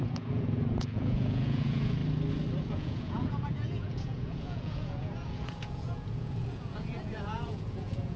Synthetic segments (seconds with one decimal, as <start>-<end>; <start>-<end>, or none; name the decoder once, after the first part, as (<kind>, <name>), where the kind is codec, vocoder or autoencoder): 0.0-2.0 (vocoder, Vocos); 2.7-8.2